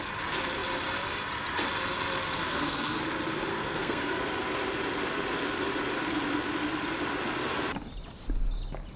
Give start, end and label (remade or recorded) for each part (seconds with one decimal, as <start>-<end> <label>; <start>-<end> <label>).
0.0-2.5 recorded; 2.5-3.0 remade; 3.0-3.5 recorded; 3.5-4.2 remade; 4.2-9.0 recorded